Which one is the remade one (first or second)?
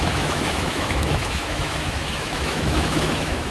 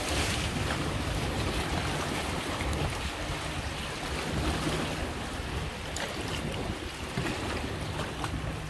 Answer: first